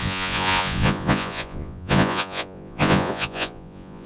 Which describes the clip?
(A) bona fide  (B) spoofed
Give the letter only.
B